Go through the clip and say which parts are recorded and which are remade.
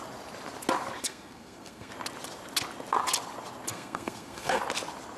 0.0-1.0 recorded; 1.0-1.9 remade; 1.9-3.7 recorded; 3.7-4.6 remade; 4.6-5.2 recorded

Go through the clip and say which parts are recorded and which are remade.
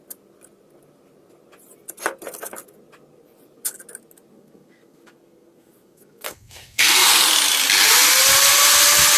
0.0-4.3 recorded; 4.3-7.1 remade; 7.1-9.2 recorded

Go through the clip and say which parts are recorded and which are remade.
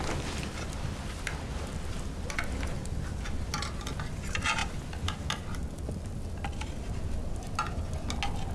0.0-8.5 recorded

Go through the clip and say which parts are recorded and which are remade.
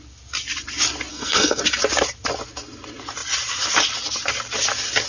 0.0-1.1 recorded; 1.1-1.6 remade; 1.6-5.1 recorded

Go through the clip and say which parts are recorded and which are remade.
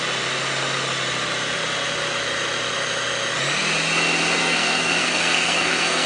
0.0-4.4 recorded; 4.4-6.1 remade